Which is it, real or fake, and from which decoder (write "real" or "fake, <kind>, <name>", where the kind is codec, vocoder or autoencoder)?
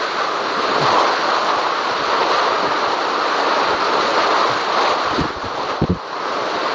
real